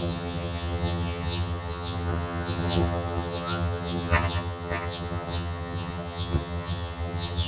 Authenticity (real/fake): fake